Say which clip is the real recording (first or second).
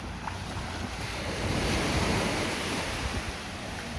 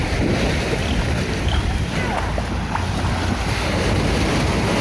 second